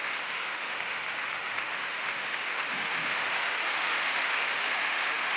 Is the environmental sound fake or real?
fake